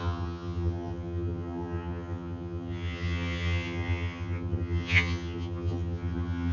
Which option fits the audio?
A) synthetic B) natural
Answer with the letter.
A